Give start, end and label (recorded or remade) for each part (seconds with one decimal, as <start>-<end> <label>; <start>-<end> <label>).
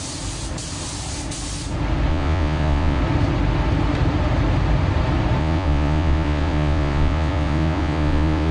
0.0-2.1 recorded; 2.1-3.0 remade; 3.0-5.4 recorded; 5.4-8.5 remade